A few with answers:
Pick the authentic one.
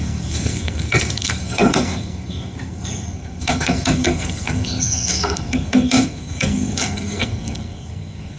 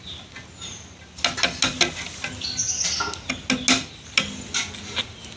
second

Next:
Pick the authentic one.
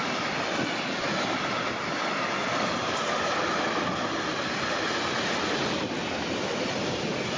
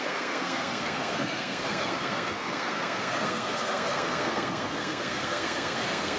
first